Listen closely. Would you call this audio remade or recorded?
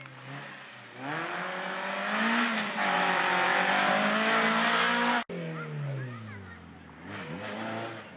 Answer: recorded